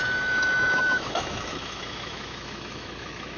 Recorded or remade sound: remade